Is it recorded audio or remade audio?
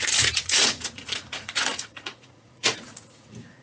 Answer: remade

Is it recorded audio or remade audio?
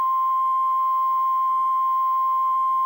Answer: recorded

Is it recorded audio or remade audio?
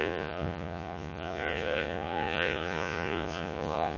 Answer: remade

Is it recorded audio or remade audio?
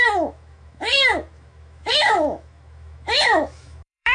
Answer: remade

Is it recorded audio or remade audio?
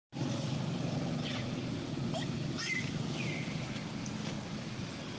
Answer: recorded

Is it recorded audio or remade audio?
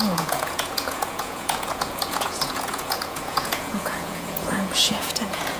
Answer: remade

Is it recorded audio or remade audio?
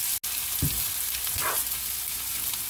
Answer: recorded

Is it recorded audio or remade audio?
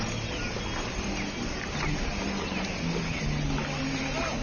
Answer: recorded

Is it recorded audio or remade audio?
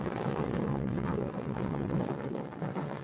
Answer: remade